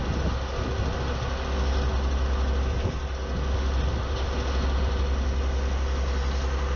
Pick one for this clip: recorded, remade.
recorded